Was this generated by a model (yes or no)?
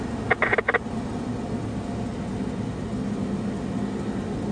no